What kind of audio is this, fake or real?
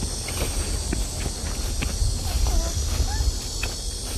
real